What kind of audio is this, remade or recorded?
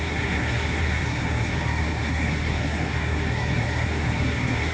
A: remade